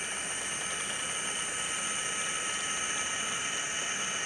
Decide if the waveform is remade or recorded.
recorded